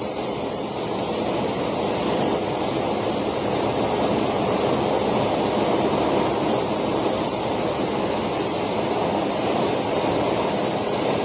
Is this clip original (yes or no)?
yes